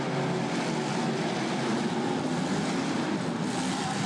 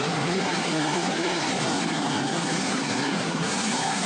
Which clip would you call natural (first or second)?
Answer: first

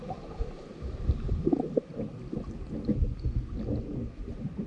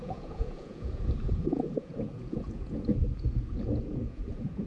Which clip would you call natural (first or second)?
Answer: first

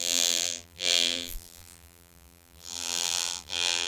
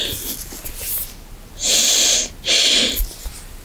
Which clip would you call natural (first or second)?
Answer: second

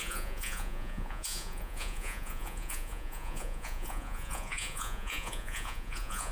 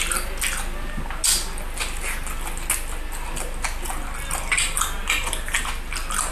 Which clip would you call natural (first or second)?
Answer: second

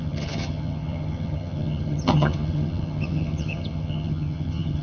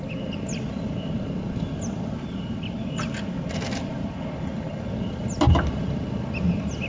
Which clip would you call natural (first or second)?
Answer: second